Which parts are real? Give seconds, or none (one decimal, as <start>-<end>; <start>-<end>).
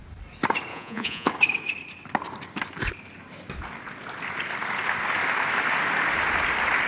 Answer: 0.0-0.7; 1.3-6.9